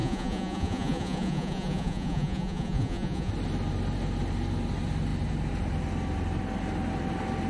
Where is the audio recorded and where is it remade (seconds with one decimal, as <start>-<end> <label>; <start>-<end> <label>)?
0.0-3.3 remade; 3.3-7.5 recorded